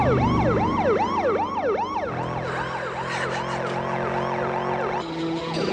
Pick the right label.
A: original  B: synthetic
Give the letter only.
A